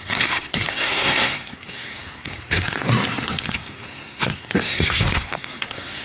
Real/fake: fake